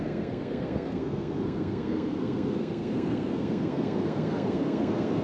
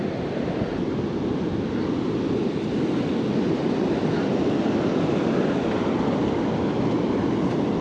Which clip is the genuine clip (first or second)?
second